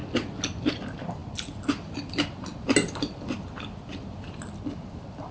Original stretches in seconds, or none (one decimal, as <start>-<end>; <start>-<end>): 0.0-5.3